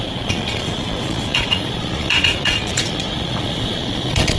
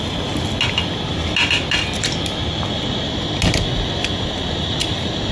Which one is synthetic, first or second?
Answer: first